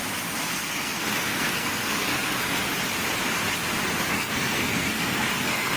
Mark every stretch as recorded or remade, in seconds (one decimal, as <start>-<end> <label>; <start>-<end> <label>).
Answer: 0.0-0.5 recorded; 0.5-2.7 remade; 2.7-4.1 recorded; 4.1-5.8 remade